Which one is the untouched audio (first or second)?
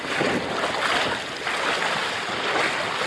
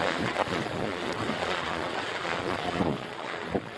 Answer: first